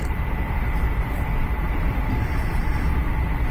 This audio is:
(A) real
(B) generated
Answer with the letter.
B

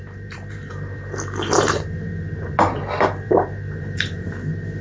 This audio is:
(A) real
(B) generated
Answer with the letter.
B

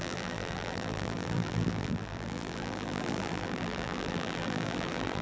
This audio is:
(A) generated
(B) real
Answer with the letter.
A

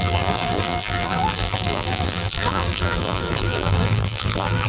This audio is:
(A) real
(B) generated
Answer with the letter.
B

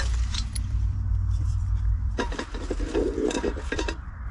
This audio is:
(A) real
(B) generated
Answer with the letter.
B